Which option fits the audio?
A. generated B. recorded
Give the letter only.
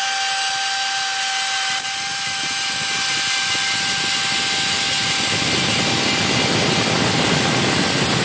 B